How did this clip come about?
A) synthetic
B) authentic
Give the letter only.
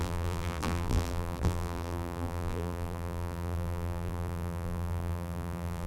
A